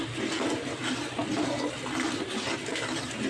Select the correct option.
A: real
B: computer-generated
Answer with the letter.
A